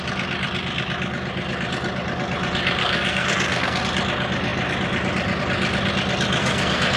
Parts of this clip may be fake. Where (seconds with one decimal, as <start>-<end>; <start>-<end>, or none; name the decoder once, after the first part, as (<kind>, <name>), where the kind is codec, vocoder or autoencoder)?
2.8-3.8 (codec, SNAC); 6.4-7.0